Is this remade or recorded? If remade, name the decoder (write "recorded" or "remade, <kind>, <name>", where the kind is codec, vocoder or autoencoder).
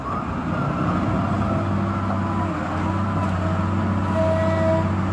recorded